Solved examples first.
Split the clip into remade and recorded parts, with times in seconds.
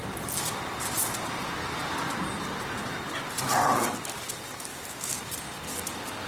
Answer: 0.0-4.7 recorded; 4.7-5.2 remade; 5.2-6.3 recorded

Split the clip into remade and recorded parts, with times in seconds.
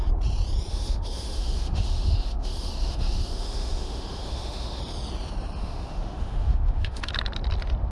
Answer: 0.0-0.7 recorded; 0.7-4.8 remade; 4.8-5.6 recorded; 5.6-7.1 remade; 7.1-7.9 recorded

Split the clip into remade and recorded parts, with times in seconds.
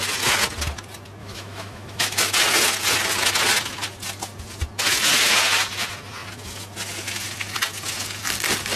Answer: 0.0-1.2 recorded; 1.2-2.2 remade; 2.2-8.8 recorded